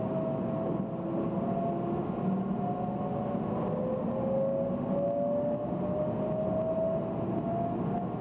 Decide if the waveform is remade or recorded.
recorded